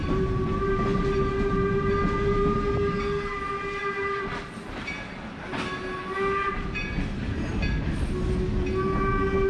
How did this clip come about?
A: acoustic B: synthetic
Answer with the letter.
A